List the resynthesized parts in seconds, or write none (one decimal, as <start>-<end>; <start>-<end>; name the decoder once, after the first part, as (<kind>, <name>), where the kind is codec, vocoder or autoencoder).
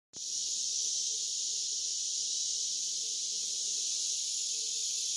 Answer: none